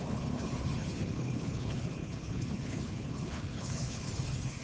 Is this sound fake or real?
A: fake